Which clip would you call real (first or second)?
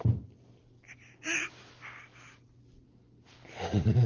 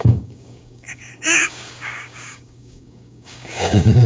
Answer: first